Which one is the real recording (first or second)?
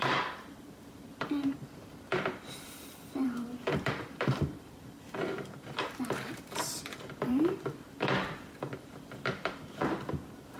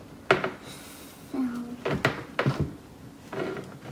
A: second